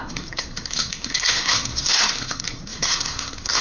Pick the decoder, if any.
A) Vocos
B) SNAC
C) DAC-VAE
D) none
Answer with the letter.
B